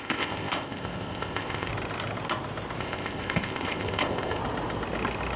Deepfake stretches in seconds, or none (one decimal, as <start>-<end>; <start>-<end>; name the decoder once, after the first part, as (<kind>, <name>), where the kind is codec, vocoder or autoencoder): 0.0-1.7 (codec, ZipCodec); 2.8-4.4